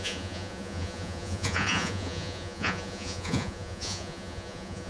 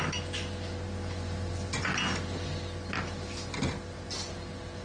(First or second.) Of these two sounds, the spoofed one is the first